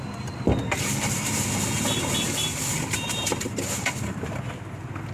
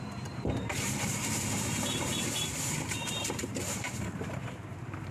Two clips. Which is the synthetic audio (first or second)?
second